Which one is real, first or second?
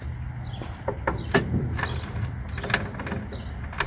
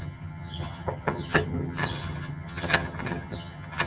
first